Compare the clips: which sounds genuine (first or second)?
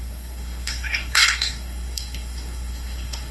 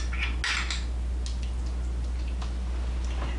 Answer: second